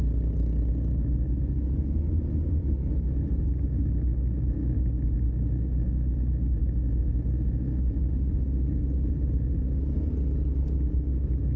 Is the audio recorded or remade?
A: recorded